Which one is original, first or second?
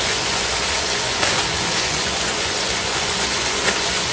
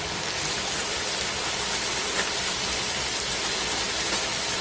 second